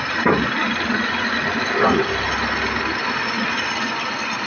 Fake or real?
real